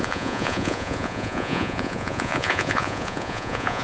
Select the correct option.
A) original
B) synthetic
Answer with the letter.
B